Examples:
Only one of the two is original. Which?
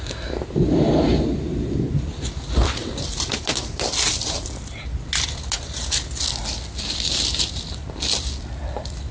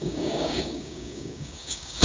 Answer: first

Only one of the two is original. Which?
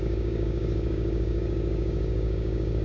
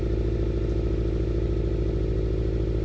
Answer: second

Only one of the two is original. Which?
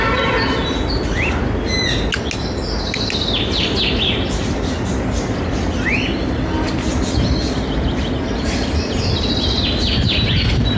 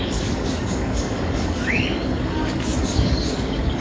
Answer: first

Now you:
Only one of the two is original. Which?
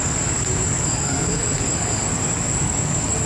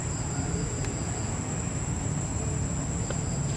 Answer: second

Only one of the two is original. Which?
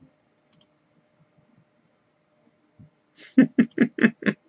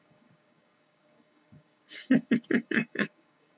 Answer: first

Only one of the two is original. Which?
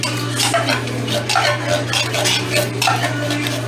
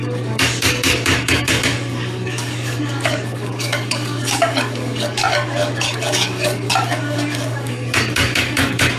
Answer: first